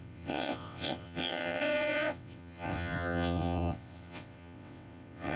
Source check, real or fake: fake